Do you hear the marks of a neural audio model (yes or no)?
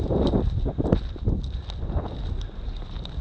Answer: no